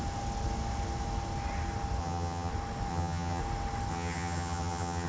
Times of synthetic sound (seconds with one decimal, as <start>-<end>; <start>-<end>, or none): 2.0-2.5; 2.9-3.4; 3.9-5.1